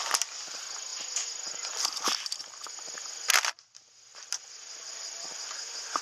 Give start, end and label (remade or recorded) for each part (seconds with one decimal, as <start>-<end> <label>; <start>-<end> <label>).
0.0-4.1 recorded; 4.1-4.9 remade; 4.9-6.0 recorded